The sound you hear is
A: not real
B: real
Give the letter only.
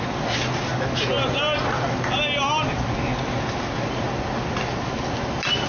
B